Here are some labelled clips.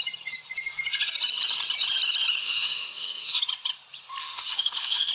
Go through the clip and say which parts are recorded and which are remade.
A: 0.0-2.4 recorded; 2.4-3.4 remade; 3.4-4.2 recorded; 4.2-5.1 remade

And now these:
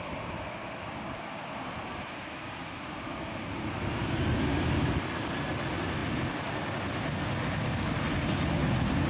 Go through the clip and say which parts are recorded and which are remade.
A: 0.0-4.0 recorded; 4.0-5.5 remade; 5.5-9.1 recorded

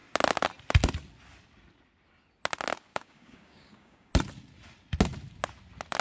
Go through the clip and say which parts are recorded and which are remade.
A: 0.0-2.9 recorded; 2.9-4.1 remade; 4.1-6.0 recorded

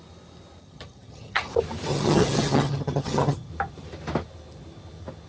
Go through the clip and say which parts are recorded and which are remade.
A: 0.0-0.6 recorded; 0.6-1.5 remade; 1.5-1.9 recorded; 1.9-3.5 remade; 3.5-5.3 recorded

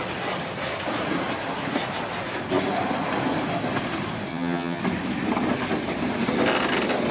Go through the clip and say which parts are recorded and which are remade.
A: 0.0-4.3 recorded; 4.3-4.8 remade; 4.8-7.1 recorded

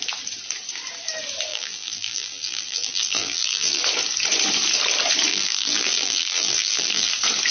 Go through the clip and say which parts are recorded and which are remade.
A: 0.0-1.5 recorded; 1.5-3.8 remade; 3.8-5.3 recorded; 5.3-7.1 remade; 7.1-7.5 recorded

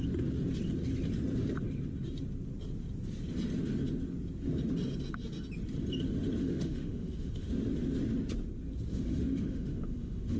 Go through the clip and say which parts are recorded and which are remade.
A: 0.0-6.4 recorded; 6.4-7.5 remade; 7.5-8.9 recorded; 8.9-10.4 remade